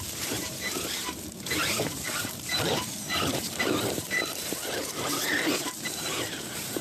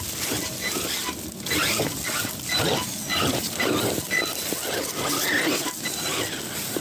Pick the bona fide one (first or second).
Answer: second